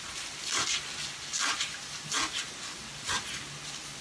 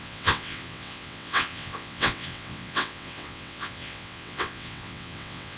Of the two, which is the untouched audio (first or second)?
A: first